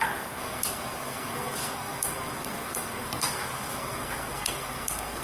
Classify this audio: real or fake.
fake